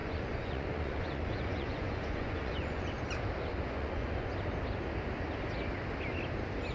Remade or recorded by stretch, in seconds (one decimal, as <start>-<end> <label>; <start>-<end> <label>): 0.0-3.0 remade; 3.0-3.5 recorded; 3.5-4.3 remade; 4.3-6.7 recorded